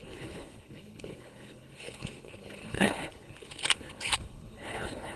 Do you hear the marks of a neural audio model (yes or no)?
yes